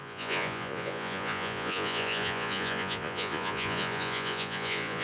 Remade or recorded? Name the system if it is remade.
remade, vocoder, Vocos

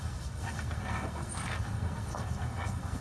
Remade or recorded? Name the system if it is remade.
remade, codec, SNAC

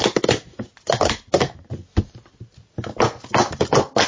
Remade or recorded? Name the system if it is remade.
recorded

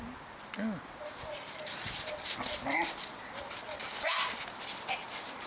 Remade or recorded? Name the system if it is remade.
recorded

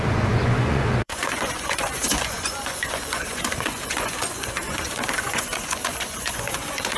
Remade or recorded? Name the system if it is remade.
remade, vocoder, Vocos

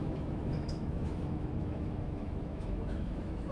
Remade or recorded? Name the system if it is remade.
remade, autoencoder, DAC-VAE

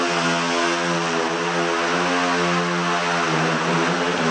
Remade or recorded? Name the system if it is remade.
recorded